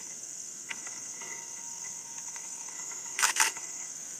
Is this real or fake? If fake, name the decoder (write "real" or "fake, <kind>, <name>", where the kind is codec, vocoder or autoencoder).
fake, codec, SNAC